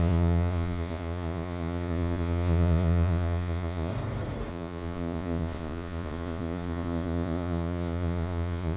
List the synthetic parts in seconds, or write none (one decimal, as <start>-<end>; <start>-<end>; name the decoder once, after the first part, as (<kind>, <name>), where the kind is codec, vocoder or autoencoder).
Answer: 0.0-3.9 (vocoder, Vocos); 4.5-8.8